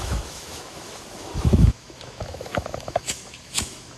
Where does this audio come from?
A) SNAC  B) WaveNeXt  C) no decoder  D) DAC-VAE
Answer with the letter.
D